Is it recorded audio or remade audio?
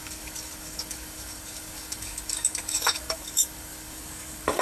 remade